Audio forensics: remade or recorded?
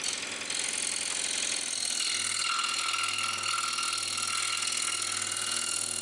recorded